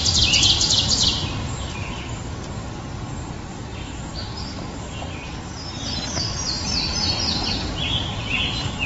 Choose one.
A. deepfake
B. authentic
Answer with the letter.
B